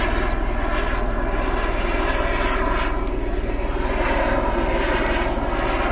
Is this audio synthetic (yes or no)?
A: no